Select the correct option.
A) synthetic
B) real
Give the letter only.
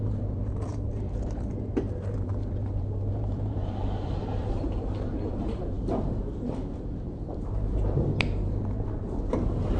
A